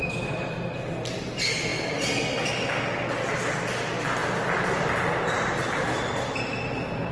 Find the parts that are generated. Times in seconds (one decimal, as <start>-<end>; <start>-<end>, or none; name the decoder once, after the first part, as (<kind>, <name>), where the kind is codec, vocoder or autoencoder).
none

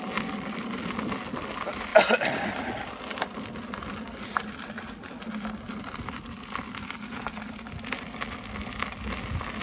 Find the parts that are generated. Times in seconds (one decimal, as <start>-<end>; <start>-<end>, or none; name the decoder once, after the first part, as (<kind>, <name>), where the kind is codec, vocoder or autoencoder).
none